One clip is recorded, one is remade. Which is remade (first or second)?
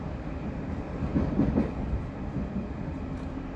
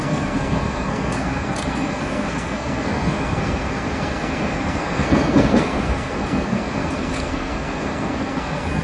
second